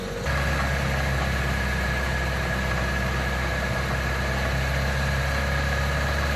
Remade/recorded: recorded